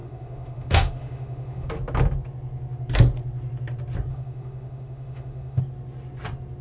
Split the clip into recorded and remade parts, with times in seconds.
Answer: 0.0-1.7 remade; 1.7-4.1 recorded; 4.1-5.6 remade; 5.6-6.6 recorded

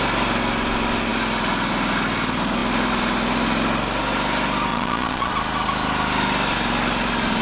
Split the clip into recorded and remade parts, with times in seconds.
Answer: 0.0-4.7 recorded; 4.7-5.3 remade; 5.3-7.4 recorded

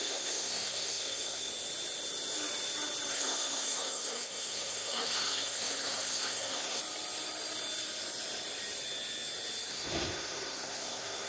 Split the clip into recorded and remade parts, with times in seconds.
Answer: 0.0-1.5 remade; 1.5-3.1 recorded; 3.1-6.8 remade; 6.8-9.7 recorded; 9.7-11.3 remade

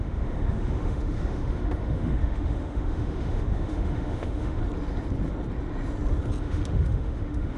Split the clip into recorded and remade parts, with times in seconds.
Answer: 0.0-4.6 remade; 4.6-6.4 recorded; 6.4-7.6 remade

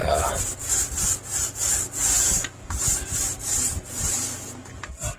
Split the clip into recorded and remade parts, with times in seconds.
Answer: 0.0-1.3 recorded; 1.3-2.9 remade; 2.9-5.2 recorded

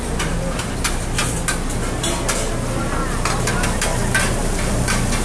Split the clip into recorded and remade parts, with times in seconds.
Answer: 0.0-5.2 recorded